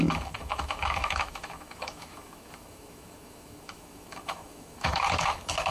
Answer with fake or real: fake